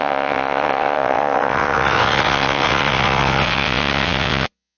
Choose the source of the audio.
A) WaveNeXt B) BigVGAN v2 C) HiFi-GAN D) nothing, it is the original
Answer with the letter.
A